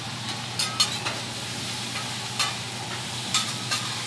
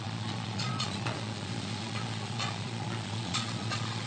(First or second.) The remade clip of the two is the second